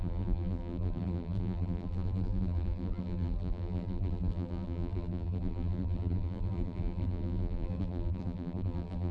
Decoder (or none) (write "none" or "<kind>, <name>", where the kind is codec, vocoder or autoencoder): vocoder, BigVGAN v2